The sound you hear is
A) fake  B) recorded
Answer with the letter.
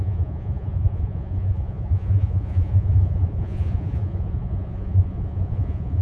A